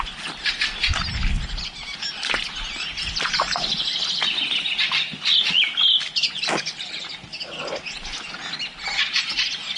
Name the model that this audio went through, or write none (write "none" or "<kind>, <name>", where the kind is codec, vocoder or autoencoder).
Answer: none